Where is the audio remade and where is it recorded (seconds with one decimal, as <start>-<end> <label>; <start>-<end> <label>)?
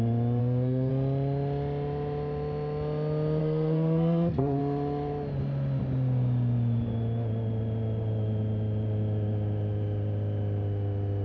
0.0-0.4 recorded; 0.4-0.9 remade; 0.9-3.4 recorded; 3.4-4.6 remade; 4.6-11.2 recorded